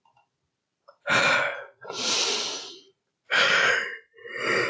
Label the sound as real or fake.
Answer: real